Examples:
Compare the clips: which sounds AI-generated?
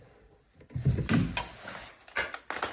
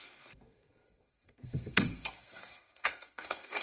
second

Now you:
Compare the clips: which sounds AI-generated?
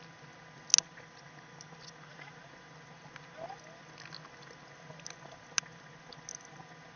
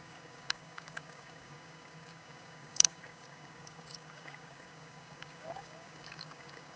second